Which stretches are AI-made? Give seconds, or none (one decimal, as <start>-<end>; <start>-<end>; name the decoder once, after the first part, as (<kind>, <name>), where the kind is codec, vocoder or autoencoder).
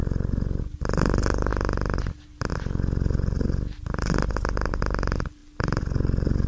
none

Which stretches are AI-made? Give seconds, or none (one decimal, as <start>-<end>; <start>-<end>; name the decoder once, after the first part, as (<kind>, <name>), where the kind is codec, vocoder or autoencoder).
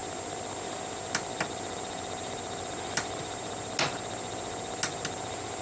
none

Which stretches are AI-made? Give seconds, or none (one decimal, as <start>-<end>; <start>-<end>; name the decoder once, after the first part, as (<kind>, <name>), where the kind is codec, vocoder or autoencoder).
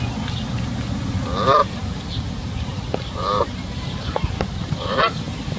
1.6-5.0 (vocoder, BigVGAN v2)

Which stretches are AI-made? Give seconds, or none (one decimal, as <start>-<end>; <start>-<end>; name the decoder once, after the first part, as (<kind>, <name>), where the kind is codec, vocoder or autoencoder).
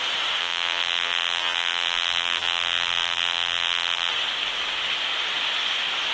0.4-4.1 (vocoder, BigVGAN v2)